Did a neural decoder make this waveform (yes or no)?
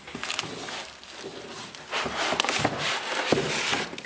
no